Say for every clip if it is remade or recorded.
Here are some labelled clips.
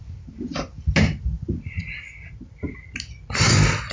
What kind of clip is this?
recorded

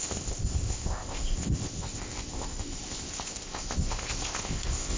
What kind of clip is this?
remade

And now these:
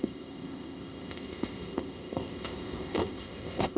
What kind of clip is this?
remade